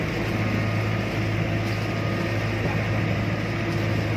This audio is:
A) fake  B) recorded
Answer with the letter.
B